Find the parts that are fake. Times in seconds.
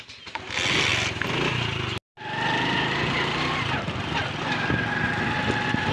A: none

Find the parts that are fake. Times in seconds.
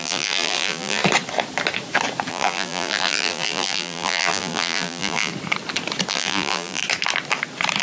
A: 0.0-1.0 (vocoder, BigVGAN v2); 2.3-5.3; 6.1-6.8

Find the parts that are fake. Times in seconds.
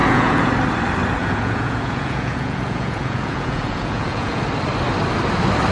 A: 0.0-0.5 (vocoder, Vocos); 1.2-4.4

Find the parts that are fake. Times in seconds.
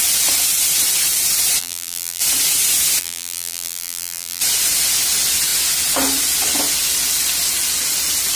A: 1.6-2.2 (vocoder, BigVGAN v2); 3.0-4.4